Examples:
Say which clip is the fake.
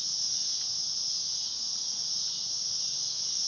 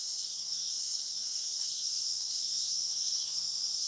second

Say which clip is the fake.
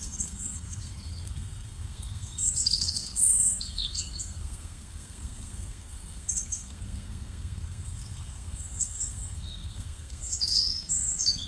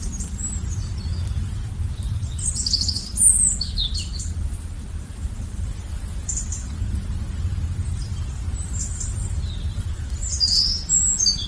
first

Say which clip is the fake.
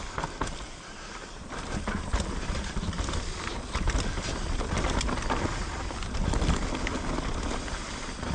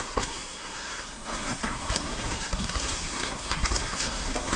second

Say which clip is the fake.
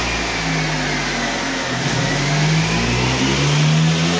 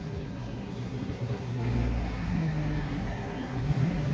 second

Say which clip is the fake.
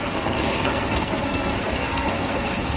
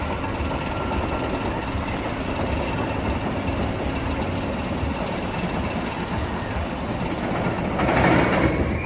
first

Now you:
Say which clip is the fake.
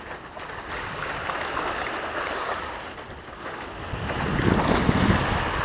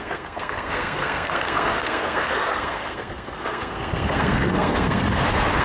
second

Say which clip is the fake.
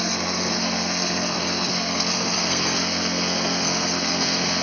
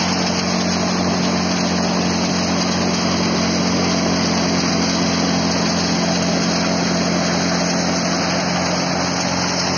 first